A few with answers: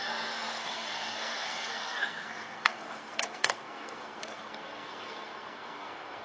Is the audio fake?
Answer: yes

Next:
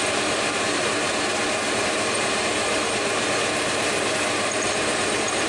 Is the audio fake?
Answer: yes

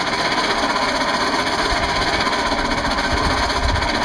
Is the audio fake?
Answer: no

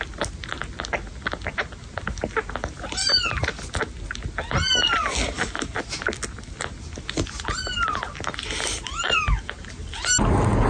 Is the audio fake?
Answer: no